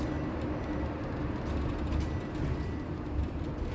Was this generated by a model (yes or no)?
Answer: no